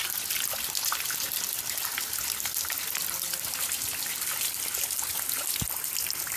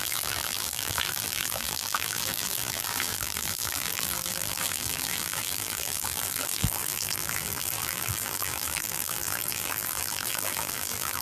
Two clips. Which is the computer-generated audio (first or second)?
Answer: second